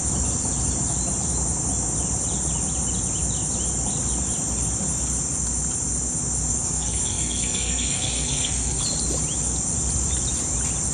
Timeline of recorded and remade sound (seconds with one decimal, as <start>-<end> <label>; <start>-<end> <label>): 0.0-6.5 recorded; 6.5-8.8 remade; 8.8-10.9 recorded